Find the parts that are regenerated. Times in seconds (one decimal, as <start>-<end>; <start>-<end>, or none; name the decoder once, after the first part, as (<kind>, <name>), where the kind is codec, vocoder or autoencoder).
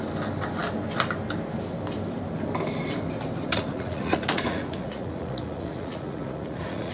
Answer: 3.5-6.9 (vocoder, Vocos)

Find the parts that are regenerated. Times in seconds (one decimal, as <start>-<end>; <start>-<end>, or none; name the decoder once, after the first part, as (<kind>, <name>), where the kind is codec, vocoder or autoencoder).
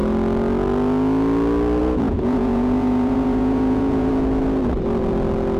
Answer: 1.8-4.1 (vocoder, Vocos)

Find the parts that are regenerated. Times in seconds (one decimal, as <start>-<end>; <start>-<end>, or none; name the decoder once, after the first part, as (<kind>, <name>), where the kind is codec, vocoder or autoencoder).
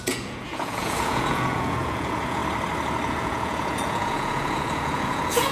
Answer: 0.0-2.4 (vocoder, Vocos); 3.1-5.5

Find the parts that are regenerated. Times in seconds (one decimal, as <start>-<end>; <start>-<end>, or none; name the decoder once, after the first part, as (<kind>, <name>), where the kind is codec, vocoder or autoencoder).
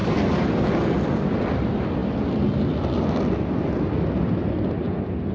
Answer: none